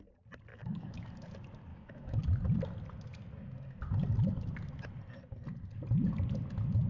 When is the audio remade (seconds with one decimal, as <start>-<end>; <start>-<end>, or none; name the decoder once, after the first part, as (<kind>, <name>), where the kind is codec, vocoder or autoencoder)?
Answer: 0.5-1.0 (autoencoder, DAC-VAE); 1.7-2.2